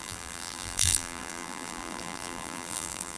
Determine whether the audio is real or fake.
fake